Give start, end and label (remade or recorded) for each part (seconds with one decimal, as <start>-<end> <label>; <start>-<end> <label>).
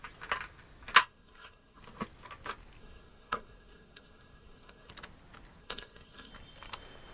0.0-1.0 recorded; 1.0-1.8 remade; 1.8-2.8 recorded; 2.8-4.9 remade; 4.9-5.6 recorded; 5.6-6.3 remade; 6.3-7.1 recorded